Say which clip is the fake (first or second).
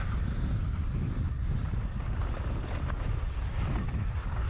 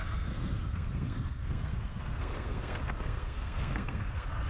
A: second